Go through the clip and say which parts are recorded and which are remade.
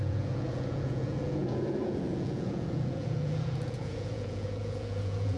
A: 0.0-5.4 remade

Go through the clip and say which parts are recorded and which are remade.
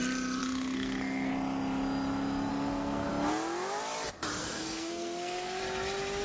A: 0.0-0.4 recorded; 0.4-1.3 remade; 1.3-2.5 recorded; 2.5-3.1 remade; 3.1-4.4 recorded; 4.4-5.6 remade; 5.6-6.2 recorded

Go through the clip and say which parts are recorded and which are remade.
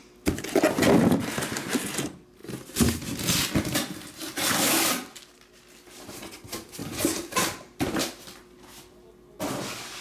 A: 0.0-10.0 recorded